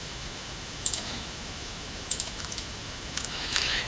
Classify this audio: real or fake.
fake